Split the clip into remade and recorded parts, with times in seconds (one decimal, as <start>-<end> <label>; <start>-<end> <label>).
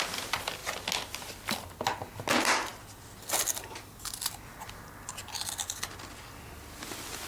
0.0-7.3 recorded